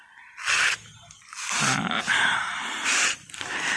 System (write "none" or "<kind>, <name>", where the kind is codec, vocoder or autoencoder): none